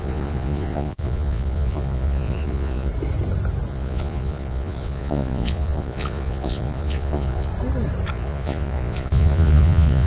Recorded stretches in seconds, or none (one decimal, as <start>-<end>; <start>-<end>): 2.9-3.7; 7.5-8.1